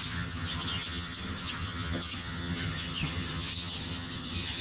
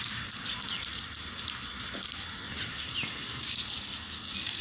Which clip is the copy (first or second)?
first